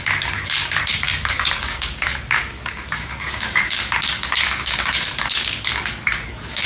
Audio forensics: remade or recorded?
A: remade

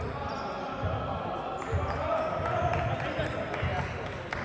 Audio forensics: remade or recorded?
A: recorded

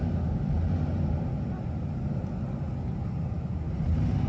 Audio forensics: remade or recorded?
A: recorded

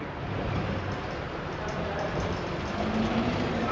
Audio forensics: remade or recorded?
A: recorded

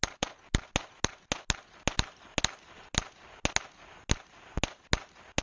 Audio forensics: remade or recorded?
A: recorded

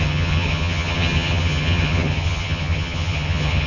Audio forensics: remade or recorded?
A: remade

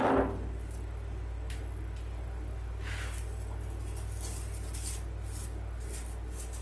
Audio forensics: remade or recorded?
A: recorded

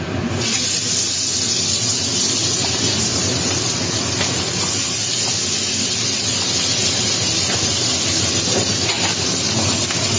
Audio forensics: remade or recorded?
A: recorded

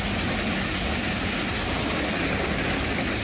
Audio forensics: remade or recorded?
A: recorded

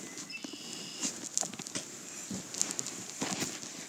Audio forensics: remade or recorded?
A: recorded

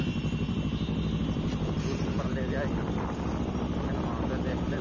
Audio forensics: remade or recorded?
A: remade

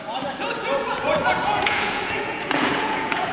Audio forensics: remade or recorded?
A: remade